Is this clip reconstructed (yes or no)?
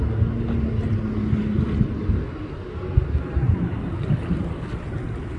no